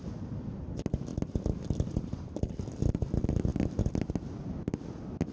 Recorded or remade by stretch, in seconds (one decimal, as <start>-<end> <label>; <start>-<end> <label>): 0.0-5.3 recorded